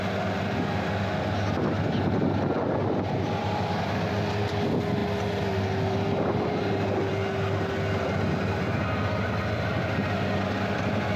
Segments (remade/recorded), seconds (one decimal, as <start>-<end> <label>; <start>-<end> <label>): 0.0-11.2 recorded

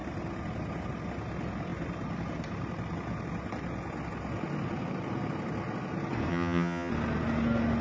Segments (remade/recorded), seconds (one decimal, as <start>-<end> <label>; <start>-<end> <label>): 0.0-6.3 recorded; 6.3-6.9 remade; 6.9-7.8 recorded

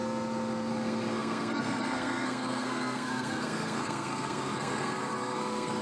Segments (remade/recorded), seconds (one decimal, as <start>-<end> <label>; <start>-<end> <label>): 0.0-0.7 recorded; 0.7-5.8 remade

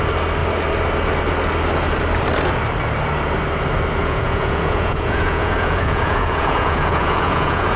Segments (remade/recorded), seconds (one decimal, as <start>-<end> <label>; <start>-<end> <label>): 0.0-4.0 recorded; 4.0-7.8 remade

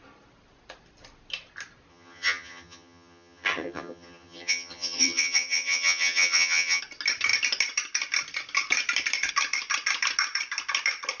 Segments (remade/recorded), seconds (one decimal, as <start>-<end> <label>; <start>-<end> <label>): 0.0-1.9 recorded; 1.9-6.8 remade; 6.8-11.2 recorded

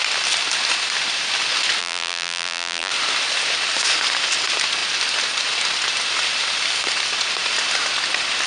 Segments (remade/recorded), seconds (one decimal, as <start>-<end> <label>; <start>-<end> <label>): 0.0-1.8 recorded; 1.8-2.9 remade; 2.9-8.5 recorded